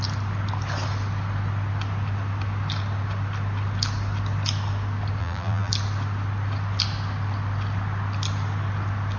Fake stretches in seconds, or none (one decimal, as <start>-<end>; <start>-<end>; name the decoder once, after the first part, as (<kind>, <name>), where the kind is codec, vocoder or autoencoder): 5.2-5.7 (vocoder, BigVGAN v2)